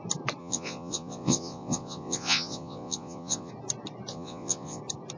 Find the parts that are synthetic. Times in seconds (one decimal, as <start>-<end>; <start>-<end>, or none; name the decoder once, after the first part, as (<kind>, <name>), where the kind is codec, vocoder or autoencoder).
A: 0.4-3.5 (vocoder, Vocos); 4.1-4.8